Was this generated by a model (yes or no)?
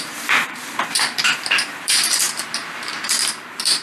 yes